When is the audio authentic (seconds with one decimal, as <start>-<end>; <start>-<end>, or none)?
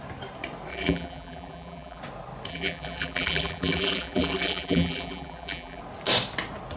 0.0-0.7; 2.0-2.5; 5.8-6.8